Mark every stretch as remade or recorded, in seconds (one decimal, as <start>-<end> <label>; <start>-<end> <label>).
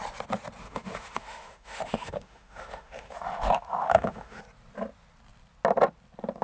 0.0-0.6 recorded; 0.6-4.4 remade; 4.4-6.4 recorded